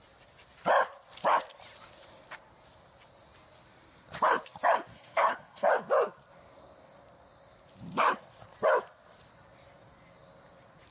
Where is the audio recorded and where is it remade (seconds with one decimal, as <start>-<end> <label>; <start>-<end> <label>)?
0.0-4.9 recorded; 4.9-5.7 remade; 5.7-10.9 recorded